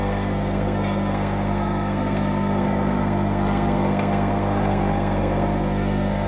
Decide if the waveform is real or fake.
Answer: fake